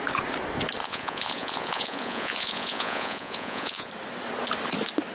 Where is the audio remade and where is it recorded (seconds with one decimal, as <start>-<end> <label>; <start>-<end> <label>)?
0.0-0.8 recorded; 0.8-3.9 remade; 3.9-5.1 recorded